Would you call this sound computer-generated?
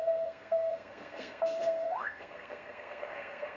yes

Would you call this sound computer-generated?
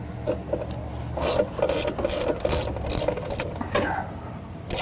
no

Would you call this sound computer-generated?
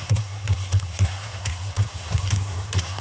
yes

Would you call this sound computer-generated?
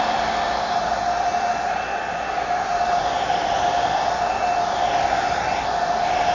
no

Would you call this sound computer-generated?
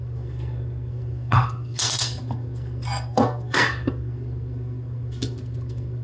yes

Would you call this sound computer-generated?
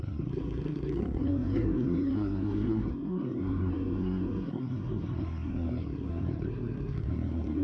yes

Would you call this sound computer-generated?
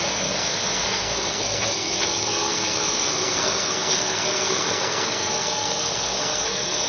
yes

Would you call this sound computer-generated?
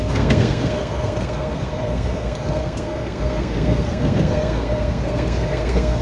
yes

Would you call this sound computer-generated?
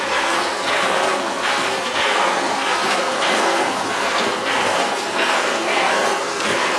yes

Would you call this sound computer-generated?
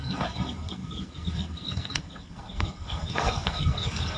yes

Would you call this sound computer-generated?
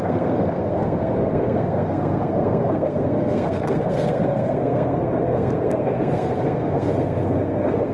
yes